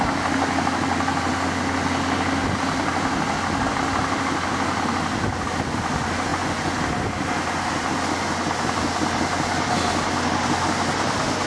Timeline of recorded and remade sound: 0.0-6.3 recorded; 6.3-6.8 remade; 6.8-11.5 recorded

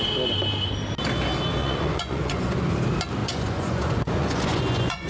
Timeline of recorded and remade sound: 0.0-1.6 recorded; 1.6-2.7 remade; 2.7-3.2 recorded; 3.2-5.1 remade

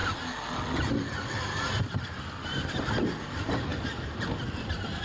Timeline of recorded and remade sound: 0.0-5.0 recorded

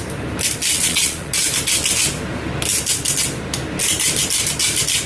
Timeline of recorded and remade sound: 0.0-0.7 recorded; 0.7-1.3 remade; 1.3-5.1 recorded

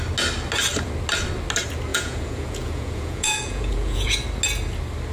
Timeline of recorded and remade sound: 0.0-1.9 recorded; 1.9-4.2 remade; 4.2-5.1 recorded

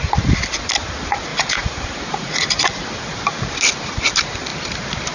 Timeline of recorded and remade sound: 0.0-1.3 recorded; 1.3-2.8 remade; 2.8-5.1 recorded

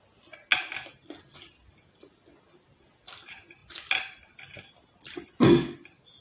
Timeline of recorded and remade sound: 0.0-6.2 recorded